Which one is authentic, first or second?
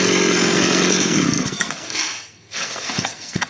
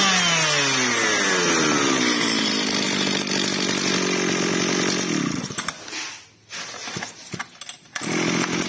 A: second